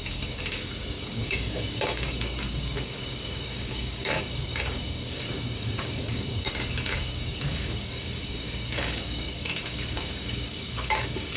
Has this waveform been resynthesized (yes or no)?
yes